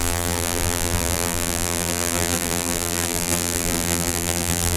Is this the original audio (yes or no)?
no